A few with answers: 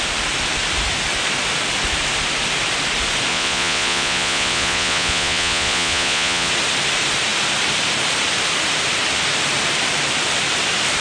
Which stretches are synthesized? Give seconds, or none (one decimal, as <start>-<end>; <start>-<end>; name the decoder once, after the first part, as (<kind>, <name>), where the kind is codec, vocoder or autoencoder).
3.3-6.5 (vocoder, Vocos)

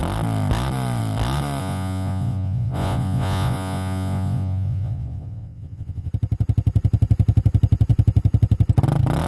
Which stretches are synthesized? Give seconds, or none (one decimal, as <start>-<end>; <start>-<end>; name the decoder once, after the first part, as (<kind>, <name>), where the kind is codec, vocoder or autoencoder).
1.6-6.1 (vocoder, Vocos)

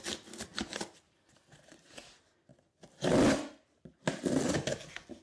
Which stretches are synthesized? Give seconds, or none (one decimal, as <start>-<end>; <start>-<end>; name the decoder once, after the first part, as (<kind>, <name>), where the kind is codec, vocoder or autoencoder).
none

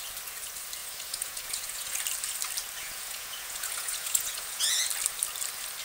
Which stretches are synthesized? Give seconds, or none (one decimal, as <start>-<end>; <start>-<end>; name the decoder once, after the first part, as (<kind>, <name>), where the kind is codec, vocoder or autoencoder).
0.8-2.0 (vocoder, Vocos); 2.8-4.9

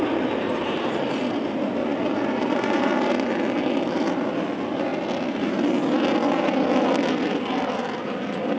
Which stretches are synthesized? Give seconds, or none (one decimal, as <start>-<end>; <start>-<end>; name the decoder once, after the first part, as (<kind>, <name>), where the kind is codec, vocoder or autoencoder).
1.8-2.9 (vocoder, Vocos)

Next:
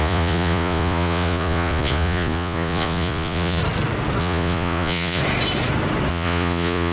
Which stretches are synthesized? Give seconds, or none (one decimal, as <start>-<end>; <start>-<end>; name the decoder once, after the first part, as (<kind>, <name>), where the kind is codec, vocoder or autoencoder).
0.0-3.6 (vocoder, Vocos); 4.2-5.2; 6.1-6.9

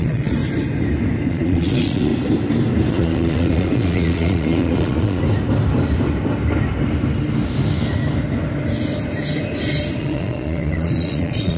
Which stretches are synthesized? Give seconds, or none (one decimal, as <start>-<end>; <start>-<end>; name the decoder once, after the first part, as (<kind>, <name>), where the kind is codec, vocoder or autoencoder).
0.0-0.4 (vocoder, Vocos); 1.3-2.1; 2.9-5.2; 10.0-11.6

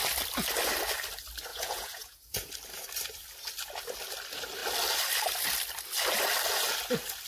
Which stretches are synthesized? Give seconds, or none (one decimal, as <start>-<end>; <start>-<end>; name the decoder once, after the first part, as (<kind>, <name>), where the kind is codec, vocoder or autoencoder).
1.5-2.5 (vocoder, Vocos)